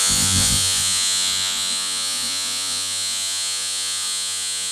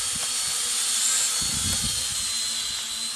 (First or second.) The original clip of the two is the second